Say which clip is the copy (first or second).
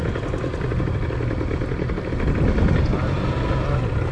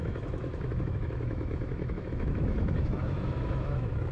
second